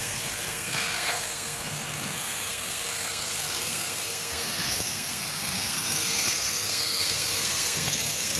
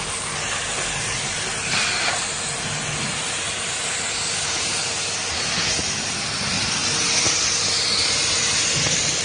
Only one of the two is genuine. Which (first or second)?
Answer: second